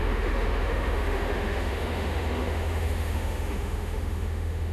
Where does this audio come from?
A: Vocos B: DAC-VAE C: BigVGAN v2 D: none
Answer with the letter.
B